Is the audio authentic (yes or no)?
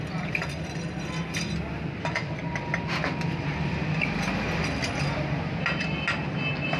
yes